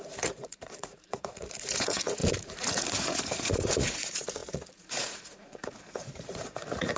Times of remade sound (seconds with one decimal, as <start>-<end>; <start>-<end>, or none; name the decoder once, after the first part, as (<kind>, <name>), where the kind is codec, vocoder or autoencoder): 0.0-7.0 (vocoder, Vocos)